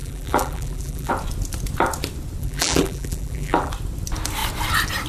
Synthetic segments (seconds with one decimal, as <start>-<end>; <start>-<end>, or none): 0.0-1.1; 2.4-3.7